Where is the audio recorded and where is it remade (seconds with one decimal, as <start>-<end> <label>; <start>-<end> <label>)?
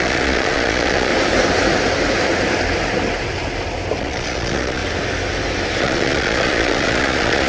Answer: 0.0-1.1 remade; 1.1-4.0 recorded; 4.0-4.8 remade; 4.8-5.8 recorded; 5.8-7.5 remade